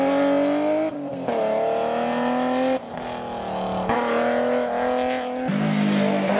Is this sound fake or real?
real